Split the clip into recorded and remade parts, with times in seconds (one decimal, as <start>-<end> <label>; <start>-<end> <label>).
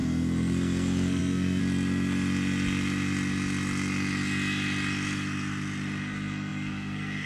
0.0-1.6 remade; 1.6-6.0 recorded; 6.0-7.3 remade